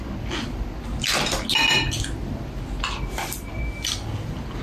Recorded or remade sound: recorded